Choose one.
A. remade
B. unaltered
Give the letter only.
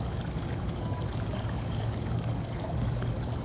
A